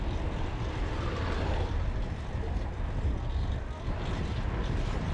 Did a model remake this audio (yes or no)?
no